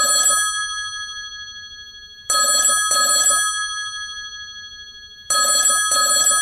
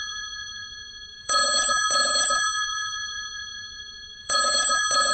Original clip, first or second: first